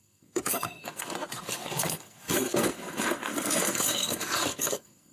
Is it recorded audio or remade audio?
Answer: remade